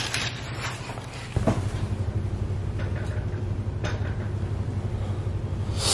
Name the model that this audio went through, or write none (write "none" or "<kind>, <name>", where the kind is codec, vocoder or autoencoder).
none